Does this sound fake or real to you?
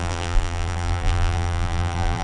fake